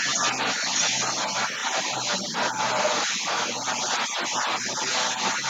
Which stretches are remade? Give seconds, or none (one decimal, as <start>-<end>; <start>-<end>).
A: 1.6-4.9